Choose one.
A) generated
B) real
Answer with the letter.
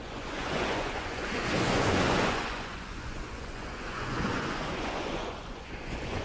A